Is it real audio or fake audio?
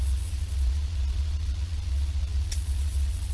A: fake